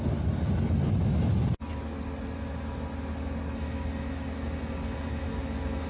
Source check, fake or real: real